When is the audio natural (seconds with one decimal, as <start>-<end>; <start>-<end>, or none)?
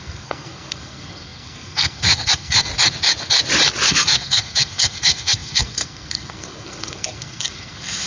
2.7-3.9